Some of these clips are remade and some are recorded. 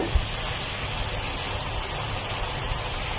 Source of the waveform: recorded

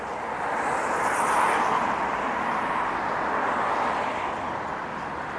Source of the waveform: recorded